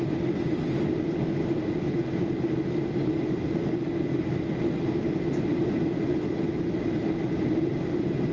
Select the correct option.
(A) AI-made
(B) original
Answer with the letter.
B